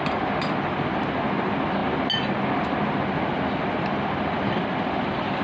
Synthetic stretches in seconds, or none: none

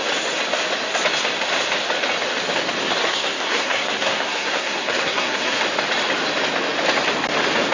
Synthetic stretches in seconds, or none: 3.0-5.6

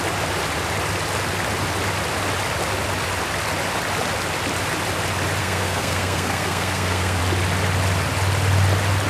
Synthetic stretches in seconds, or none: 5.4-7.2

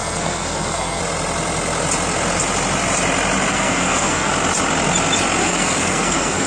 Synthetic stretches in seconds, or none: 0.0-1.0; 3.5-4.3; 5.4-6.5